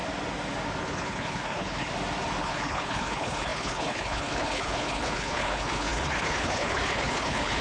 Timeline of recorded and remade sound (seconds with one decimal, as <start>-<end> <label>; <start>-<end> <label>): 0.0-0.8 recorded; 0.8-1.9 remade; 1.9-2.4 recorded; 2.4-7.6 remade